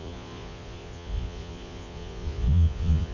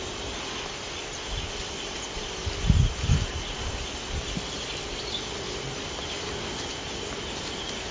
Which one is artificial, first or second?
first